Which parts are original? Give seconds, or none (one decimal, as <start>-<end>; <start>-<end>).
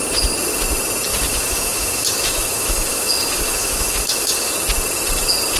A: 0.0-1.1; 4.5-5.6